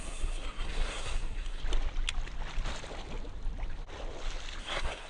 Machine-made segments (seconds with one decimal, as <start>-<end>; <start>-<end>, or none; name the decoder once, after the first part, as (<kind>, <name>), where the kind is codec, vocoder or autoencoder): 0.0-1.6 (codec, SNAC); 4.6-5.1